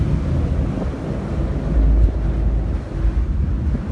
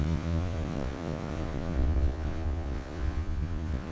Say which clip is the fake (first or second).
second